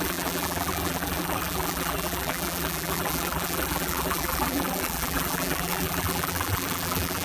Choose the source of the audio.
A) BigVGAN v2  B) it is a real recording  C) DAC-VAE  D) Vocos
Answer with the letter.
A